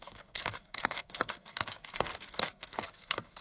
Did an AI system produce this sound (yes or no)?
yes